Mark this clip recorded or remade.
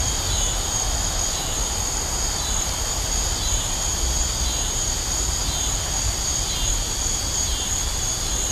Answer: remade